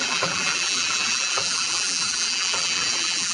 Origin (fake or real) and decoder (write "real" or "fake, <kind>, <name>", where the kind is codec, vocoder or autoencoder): fake, vocoder, BigVGAN v2